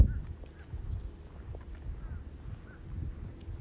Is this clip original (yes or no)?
yes